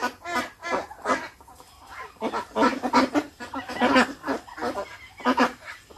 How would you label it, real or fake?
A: real